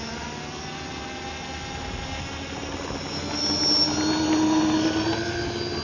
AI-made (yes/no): no